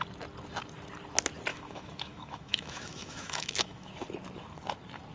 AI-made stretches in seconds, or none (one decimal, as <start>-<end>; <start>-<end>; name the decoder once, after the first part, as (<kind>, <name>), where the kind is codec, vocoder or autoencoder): 1.5-3.9 (autoencoder, DAC-VAE)